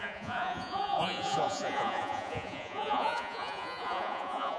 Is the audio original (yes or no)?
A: no